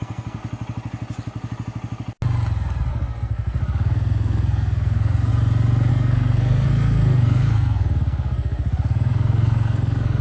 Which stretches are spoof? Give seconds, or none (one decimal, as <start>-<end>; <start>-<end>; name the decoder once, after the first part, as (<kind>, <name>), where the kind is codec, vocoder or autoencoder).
0.0-0.4 (codec, SNAC); 2.9-5.3; 5.9-10.2